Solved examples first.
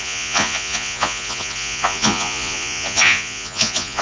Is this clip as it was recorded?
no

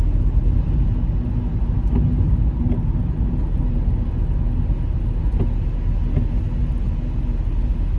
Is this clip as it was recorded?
yes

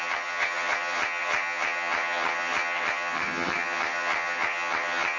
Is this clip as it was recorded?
no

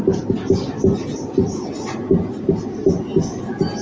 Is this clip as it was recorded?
yes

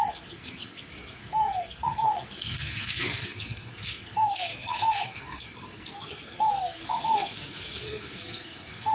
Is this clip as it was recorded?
no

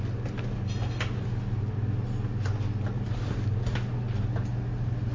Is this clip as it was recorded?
yes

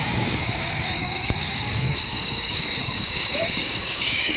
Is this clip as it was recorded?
no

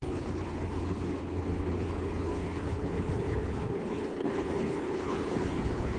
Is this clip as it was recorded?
no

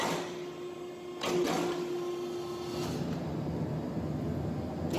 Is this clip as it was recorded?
yes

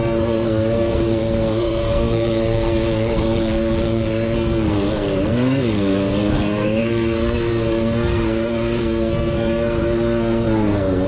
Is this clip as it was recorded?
no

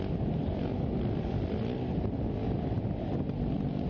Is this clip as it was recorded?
yes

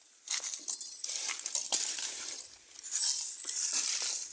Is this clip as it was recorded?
yes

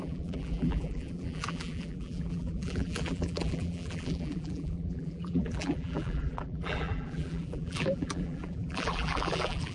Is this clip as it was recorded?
no